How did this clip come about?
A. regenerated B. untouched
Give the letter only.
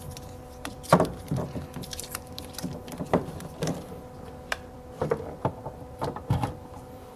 A